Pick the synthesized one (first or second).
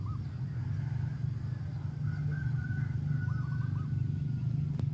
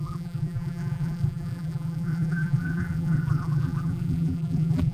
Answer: second